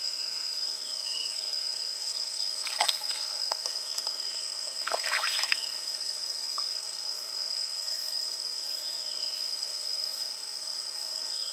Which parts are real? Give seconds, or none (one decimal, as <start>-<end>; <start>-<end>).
none